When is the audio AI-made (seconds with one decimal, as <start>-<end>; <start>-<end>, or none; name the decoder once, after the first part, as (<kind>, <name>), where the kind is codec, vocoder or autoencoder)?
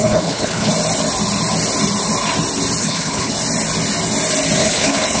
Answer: 0.0-0.7 (codec, HILCodec); 2.8-3.3; 4.6-5.2